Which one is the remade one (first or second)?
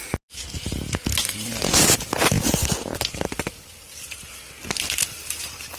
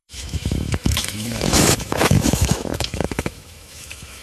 second